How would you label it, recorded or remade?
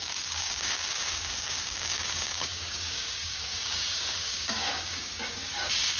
remade